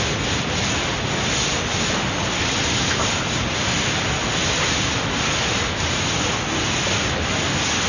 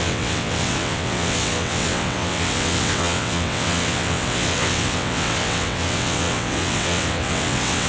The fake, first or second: second